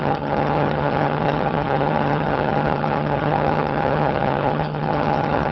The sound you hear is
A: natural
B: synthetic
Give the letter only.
B